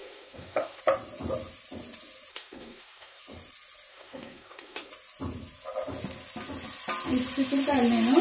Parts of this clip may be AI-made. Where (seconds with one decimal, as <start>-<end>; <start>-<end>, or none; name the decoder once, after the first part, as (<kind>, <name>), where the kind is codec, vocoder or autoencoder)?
0.0-0.8 (codec, SNAC); 2.3-3.2; 3.9-4.9